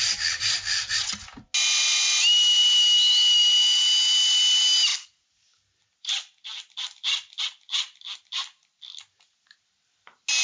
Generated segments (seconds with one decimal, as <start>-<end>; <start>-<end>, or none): none